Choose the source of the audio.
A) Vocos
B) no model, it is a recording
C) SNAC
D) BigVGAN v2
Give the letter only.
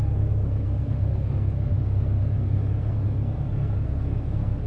C